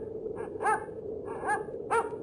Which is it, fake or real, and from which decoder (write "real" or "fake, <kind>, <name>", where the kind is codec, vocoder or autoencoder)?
real